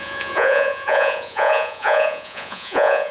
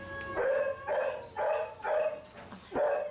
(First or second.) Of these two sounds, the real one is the second